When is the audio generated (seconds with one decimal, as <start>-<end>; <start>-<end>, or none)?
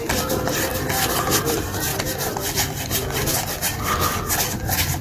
0.0-0.7; 1.5-1.9